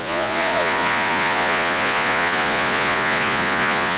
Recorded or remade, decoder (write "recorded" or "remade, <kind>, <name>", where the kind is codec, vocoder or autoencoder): remade, vocoder, Vocos